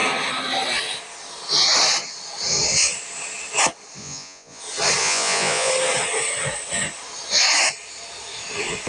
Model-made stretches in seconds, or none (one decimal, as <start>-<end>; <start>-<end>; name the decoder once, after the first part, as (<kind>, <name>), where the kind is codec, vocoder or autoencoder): 4.0-4.6 (vocoder, Vocos); 5.0-5.7